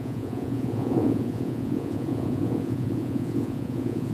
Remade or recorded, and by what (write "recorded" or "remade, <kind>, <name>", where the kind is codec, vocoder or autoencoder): remade, vocoder, Vocos